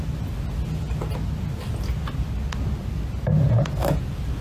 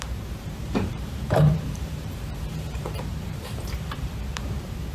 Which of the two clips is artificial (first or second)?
second